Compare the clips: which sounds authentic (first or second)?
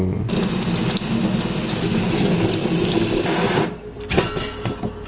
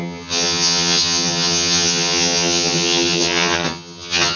first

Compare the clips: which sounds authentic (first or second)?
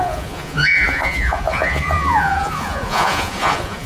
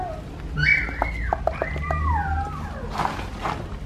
second